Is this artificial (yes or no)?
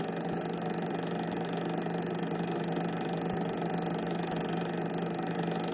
no